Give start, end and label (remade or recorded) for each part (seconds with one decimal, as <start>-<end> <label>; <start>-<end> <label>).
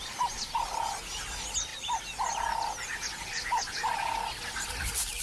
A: 0.0-5.2 recorded